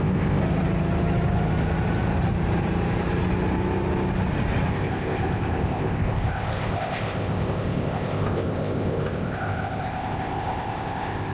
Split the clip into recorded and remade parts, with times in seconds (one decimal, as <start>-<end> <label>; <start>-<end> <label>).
0.0-0.4 remade; 0.4-4.7 recorded; 4.7-11.3 remade